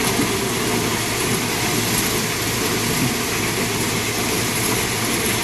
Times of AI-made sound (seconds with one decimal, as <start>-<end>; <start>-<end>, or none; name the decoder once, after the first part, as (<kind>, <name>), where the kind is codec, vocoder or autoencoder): none